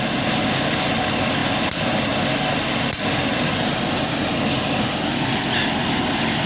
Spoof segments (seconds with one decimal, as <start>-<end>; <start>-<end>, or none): none